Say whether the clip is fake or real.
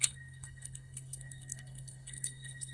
fake